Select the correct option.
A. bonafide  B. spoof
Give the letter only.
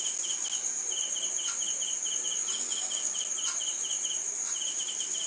A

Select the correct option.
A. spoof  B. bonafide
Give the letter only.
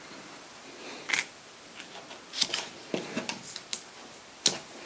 B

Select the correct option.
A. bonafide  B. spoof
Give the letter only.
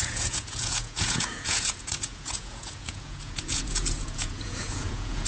B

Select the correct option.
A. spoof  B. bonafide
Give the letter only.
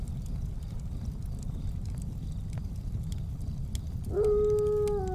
B